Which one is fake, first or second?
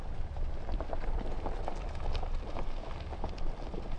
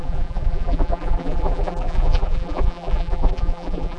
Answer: second